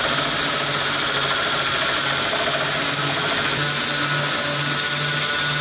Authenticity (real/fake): real